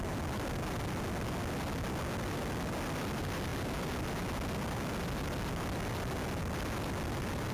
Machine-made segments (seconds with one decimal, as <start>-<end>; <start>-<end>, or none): none